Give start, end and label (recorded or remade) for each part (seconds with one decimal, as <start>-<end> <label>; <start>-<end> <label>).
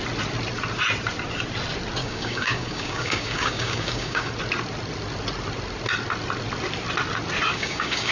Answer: 0.0-2.0 recorded; 2.0-4.3 remade; 4.3-7.5 recorded; 7.5-8.1 remade